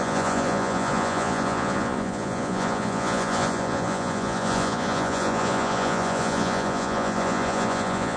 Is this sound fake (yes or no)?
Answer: yes